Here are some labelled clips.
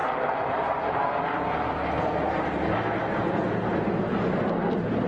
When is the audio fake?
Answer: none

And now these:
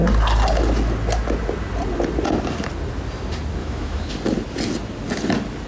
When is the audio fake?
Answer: 3.6-4.1